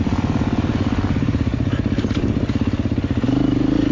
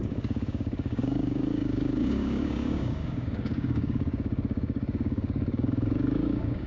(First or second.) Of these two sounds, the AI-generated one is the second